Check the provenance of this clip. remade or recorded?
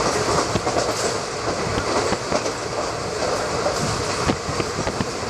recorded